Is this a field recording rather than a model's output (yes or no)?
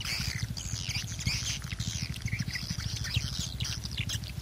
yes